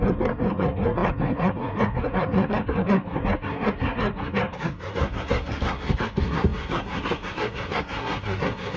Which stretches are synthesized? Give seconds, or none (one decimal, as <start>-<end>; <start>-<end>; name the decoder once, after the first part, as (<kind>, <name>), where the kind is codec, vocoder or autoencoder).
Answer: 0.0-8.8 (codec, SNAC)